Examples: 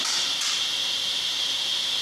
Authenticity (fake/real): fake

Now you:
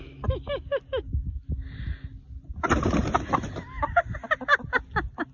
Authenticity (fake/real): real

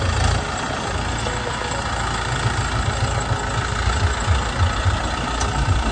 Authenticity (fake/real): real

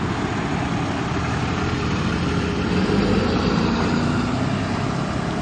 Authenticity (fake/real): real